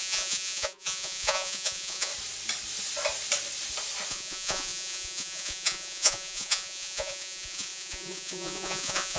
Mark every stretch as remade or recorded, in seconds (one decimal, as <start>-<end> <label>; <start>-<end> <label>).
0.0-2.1 remade; 2.1-4.1 recorded; 4.1-9.2 remade